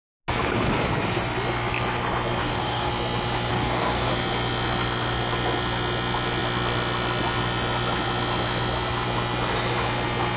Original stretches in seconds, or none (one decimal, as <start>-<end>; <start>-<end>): 0.0-2.4; 2.9-3.5; 4.1-10.4